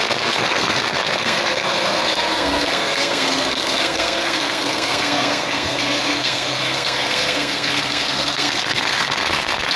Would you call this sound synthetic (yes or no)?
yes